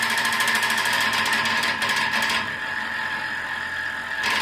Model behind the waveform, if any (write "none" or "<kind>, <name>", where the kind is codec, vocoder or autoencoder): none